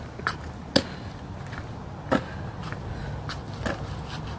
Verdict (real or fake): real